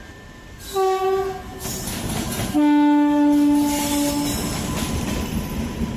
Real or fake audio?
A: real